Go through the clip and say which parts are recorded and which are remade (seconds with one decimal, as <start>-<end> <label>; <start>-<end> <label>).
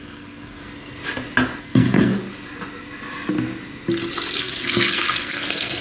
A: 0.0-1.0 remade; 1.0-1.6 recorded; 1.6-2.1 remade; 2.1-4.4 recorded; 4.4-5.8 remade